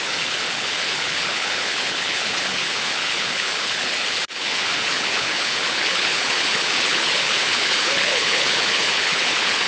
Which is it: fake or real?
fake